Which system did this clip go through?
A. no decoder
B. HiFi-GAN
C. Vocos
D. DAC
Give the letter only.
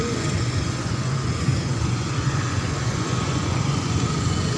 C